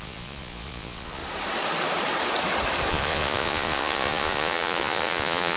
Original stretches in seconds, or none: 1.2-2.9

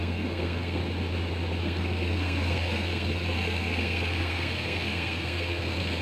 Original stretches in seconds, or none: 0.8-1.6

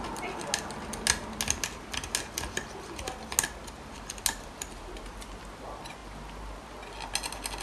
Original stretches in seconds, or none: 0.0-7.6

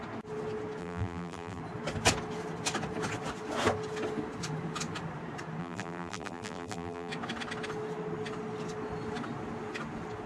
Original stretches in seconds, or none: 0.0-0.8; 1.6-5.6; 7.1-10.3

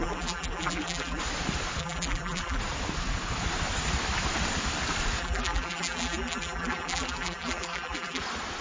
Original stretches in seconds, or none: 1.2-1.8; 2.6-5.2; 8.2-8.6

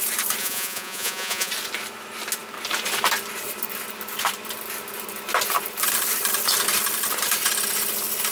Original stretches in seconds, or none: 0.0-0.4; 1.5-8.3

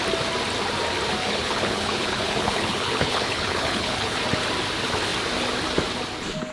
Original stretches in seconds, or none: 0.0-1.2; 4.2-6.5

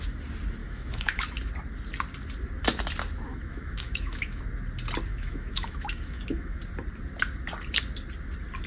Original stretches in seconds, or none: 0.0-0.6; 1.5-3.3; 4.4-5.1; 6.6-8.7